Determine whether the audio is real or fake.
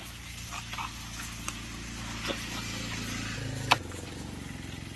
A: real